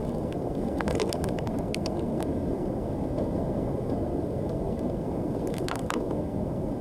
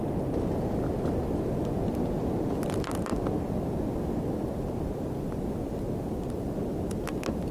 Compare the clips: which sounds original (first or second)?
second